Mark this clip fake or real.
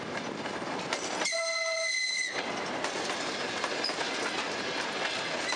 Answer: real